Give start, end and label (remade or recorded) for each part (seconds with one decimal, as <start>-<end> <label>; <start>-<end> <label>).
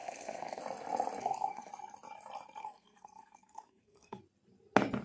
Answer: 0.0-0.6 remade; 0.6-1.2 recorded; 1.2-1.7 remade; 1.7-2.6 recorded; 2.6-4.2 remade; 4.2-5.0 recorded